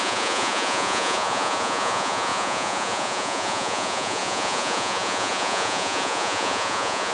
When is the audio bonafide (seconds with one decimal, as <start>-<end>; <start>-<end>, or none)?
none